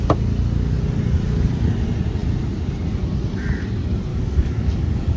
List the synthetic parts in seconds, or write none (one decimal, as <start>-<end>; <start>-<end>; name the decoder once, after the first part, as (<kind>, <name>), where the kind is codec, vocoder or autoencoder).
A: 4.1-5.2 (codec, DAC)